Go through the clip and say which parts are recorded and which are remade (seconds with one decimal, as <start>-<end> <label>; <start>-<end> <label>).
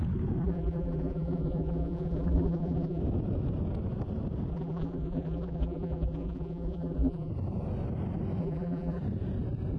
0.0-0.4 recorded; 0.4-3.0 remade; 3.0-4.5 recorded; 4.5-7.3 remade; 7.3-8.4 recorded; 8.4-9.0 remade; 9.0-9.8 recorded